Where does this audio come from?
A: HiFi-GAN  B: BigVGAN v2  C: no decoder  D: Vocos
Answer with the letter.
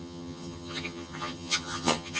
A